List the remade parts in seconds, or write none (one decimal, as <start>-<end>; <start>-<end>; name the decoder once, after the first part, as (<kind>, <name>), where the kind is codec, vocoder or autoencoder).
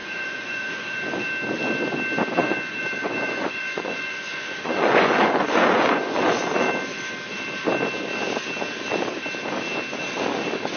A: 0.0-1.0 (vocoder, Vocos); 2.4-6.3